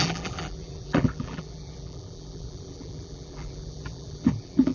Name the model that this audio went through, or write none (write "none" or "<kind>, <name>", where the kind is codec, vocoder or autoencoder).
vocoder, BigVGAN v2